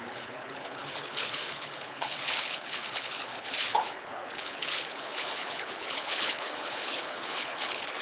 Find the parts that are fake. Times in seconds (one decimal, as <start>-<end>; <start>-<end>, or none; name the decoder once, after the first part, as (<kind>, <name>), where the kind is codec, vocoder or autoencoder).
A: 0.0-8.0 (codec, HILCodec)